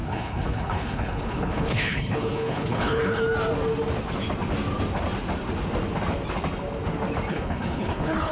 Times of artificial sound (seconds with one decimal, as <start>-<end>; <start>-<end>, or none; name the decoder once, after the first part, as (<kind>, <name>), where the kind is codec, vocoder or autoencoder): 0.0-3.2 (codec, HILCodec); 7.3-8.3